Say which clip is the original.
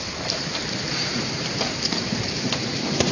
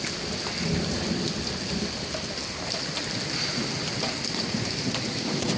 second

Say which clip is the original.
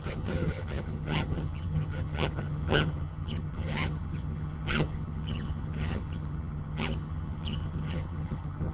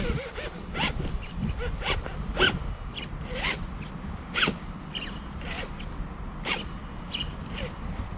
second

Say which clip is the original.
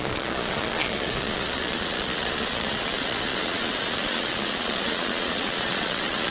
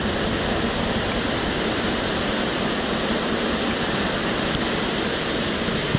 second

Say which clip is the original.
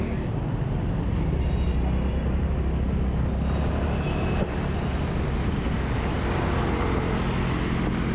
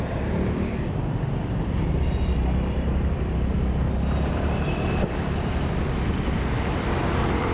first